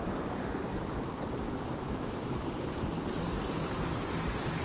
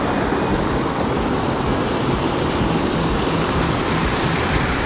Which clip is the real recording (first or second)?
second